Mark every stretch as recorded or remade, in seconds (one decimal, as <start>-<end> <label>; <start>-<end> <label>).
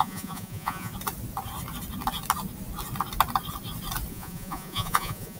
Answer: 0.0-0.9 remade; 0.9-4.1 recorded; 4.1-5.4 remade